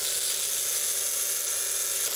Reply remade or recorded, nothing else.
recorded